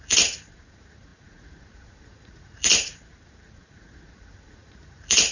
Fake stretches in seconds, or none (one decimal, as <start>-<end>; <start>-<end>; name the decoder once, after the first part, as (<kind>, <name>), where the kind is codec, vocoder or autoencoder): 0.0-5.3 (vocoder, Vocos)